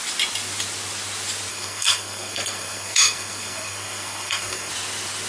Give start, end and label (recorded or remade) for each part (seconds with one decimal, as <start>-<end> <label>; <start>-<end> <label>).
0.0-1.5 recorded; 1.5-4.7 remade; 4.7-5.3 recorded